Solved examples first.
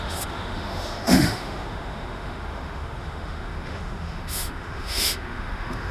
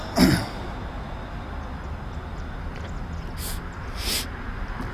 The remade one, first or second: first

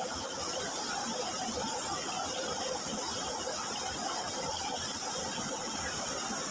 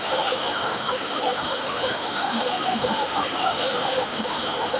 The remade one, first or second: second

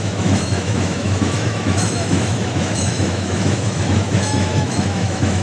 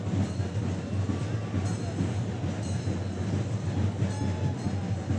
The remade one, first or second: first